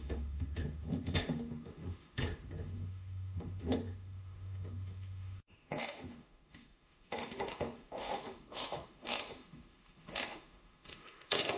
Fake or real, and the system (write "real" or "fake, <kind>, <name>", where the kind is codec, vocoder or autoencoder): fake, autoencoder, DAC-VAE